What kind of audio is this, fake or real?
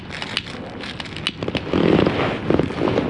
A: real